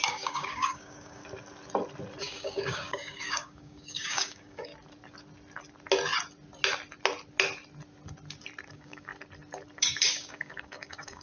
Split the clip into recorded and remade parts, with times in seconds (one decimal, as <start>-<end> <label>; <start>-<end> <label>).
0.0-1.2 remade; 1.2-2.2 recorded; 2.2-4.7 remade; 4.7-8.7 recorded; 8.7-9.1 remade; 9.1-9.8 recorded; 9.8-11.2 remade